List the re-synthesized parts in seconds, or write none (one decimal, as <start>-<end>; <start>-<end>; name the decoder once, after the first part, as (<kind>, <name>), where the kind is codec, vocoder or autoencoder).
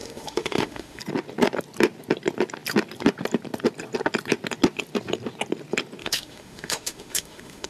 0.0-1.0 (autoencoder, DAC-VAE); 6.0-7.7